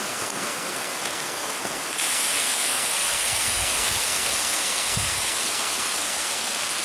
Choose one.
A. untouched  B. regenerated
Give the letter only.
B